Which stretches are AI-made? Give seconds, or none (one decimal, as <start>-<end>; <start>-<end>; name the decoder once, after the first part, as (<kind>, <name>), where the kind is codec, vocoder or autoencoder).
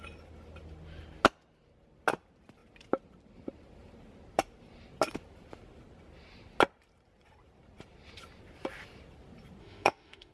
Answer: 9.6-10.3 (autoencoder, DAC-VAE)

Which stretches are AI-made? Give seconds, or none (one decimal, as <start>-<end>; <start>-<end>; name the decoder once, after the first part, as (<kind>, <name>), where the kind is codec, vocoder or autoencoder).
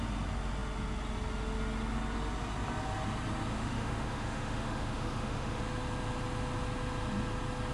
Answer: 3.5-5.6 (autoencoder, DAC-VAE)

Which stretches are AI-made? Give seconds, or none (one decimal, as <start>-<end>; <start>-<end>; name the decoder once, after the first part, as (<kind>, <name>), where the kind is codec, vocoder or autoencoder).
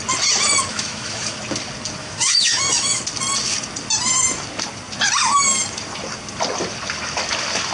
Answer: 0.7-1.4 (autoencoder, DAC-VAE); 2.0-3.0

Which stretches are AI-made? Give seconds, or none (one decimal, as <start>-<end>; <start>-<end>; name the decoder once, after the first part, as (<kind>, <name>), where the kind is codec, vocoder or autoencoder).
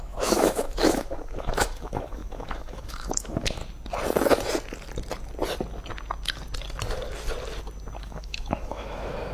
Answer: 0.0-3.6 (autoencoder, DAC-VAE); 8.0-9.3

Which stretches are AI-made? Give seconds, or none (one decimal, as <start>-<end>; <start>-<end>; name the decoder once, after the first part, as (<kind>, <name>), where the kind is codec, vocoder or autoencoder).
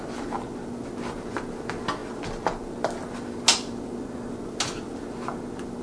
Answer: none